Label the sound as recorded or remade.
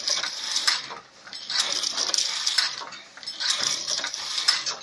remade